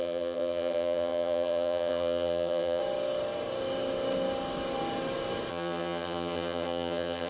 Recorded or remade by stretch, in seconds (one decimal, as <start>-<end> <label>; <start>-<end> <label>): 0.0-2.8 remade; 2.8-5.5 recorded; 5.5-7.3 remade